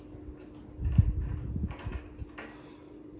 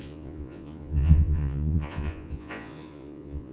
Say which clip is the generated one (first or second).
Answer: second